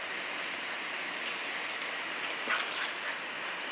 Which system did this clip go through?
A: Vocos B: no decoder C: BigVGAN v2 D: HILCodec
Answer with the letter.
B